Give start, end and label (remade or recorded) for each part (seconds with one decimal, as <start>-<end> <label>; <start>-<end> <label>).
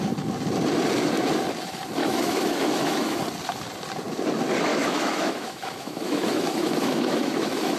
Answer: 0.0-2.0 recorded; 2.0-3.2 remade; 3.2-4.7 recorded; 4.7-7.8 remade